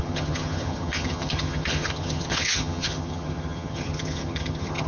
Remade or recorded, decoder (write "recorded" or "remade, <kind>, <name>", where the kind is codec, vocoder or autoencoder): remade, vocoder, HiFi-GAN